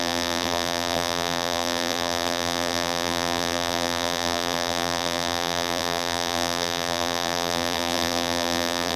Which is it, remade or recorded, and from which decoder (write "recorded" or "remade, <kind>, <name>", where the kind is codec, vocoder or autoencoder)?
remade, vocoder, BigVGAN v2